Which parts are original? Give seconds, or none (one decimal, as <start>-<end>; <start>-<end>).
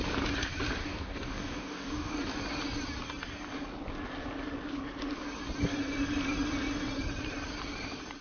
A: 0.0-0.8; 2.1-8.2